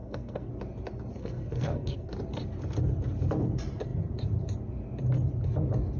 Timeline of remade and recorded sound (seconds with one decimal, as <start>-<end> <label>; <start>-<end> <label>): 0.0-0.5 remade; 0.5-1.2 recorded; 1.2-2.1 remade; 2.1-6.0 recorded